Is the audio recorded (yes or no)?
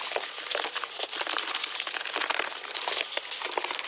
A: yes